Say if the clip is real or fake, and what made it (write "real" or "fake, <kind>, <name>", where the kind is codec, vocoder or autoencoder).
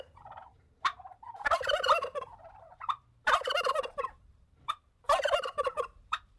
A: fake, vocoder, BigVGAN v2